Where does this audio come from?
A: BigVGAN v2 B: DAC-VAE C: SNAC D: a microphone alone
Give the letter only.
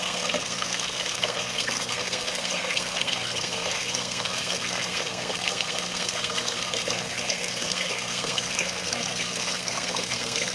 C